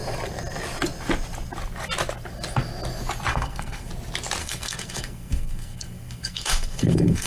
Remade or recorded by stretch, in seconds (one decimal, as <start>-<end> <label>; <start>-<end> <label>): 0.0-3.3 recorded; 3.3-3.9 remade; 3.9-4.4 recorded; 4.4-7.3 remade